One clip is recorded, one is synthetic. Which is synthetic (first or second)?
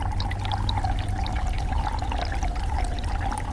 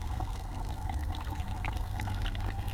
second